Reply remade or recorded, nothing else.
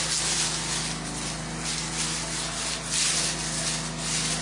recorded